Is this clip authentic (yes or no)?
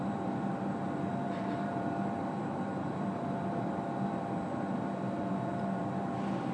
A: no